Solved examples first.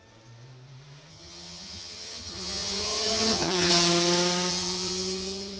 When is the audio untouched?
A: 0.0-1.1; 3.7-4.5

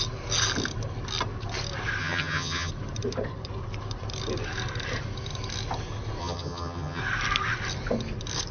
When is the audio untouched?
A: 0.0-2.0; 2.7-6.2; 7.0-8.5

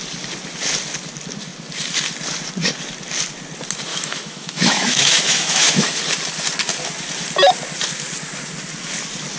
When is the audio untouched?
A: 0.0-3.9; 6.0-9.4

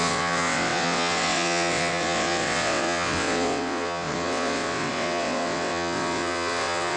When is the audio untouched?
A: none

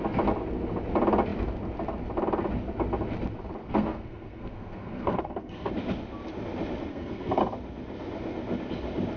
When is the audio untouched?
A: 0.0-3.6; 5.7-6.9; 7.4-9.2